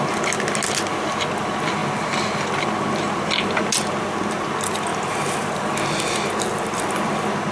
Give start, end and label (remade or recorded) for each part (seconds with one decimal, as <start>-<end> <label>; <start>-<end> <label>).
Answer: 0.0-7.5 recorded

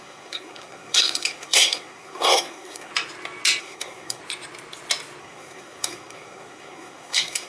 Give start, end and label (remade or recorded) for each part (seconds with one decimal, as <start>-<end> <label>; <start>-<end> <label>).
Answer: 0.0-2.9 remade; 2.9-3.6 recorded; 3.6-4.2 remade; 4.2-5.2 recorded; 5.2-7.5 remade

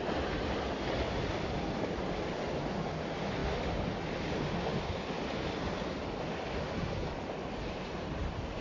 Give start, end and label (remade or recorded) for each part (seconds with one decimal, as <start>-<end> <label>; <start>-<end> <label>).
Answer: 0.0-8.6 recorded